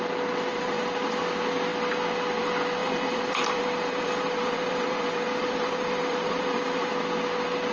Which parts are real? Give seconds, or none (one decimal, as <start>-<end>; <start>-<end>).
0.0-0.5; 1.2-2.8; 6.9-7.7